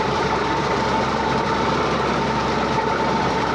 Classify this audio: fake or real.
fake